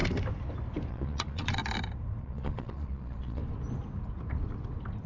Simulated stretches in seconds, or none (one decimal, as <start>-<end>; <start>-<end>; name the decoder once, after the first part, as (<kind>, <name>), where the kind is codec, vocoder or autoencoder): 0.9-1.6 (vocoder, Vocos); 2.2-3.4